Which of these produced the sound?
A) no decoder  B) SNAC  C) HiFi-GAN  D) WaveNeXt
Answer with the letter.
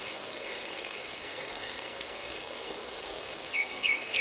B